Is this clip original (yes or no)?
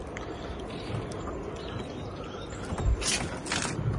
yes